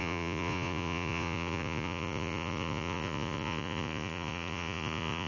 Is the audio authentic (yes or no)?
no